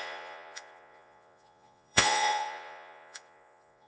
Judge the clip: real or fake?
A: fake